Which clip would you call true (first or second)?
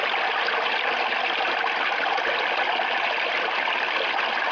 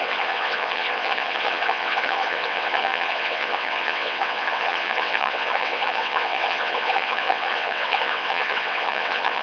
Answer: first